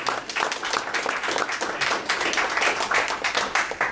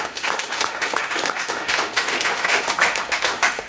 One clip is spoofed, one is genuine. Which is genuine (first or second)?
first